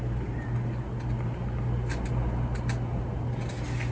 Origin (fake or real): real